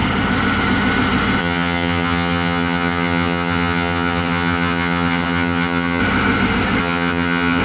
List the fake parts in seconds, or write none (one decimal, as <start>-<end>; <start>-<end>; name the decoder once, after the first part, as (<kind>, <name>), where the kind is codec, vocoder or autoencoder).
1.4-6.0 (vocoder, HiFi-GAN); 6.8-7.6